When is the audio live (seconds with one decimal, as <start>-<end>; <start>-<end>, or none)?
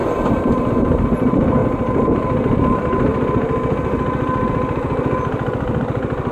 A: 3.1-5.8